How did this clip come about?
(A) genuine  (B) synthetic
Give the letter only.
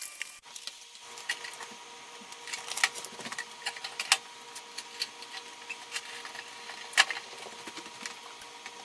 A